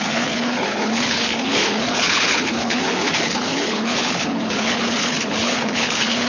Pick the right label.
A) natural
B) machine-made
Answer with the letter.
B